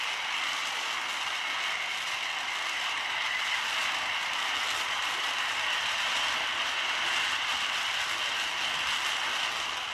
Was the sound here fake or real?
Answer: real